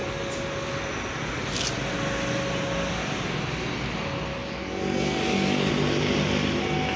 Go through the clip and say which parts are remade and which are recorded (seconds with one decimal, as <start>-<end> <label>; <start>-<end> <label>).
0.0-4.3 recorded; 4.3-5.7 remade; 5.7-7.0 recorded